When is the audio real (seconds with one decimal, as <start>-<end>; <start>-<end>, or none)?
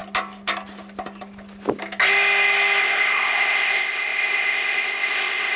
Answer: 0.0-2.8